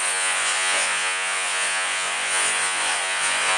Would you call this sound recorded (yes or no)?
no